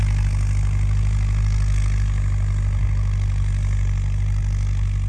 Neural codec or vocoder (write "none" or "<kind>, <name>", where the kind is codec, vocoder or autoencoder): none